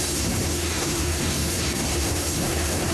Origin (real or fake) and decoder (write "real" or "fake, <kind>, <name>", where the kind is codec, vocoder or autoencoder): fake, codec, SNAC